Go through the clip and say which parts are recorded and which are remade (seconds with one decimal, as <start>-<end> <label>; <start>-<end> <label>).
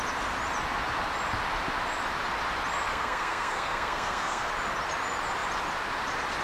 0.0-2.9 recorded; 2.9-4.5 remade; 4.5-6.4 recorded